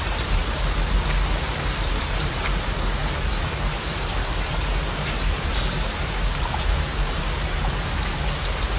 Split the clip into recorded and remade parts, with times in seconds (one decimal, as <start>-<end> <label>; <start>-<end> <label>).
0.0-0.4 remade; 0.4-2.0 recorded; 2.0-8.8 remade